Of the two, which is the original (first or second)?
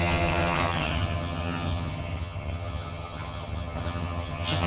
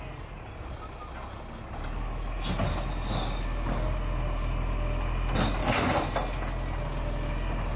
second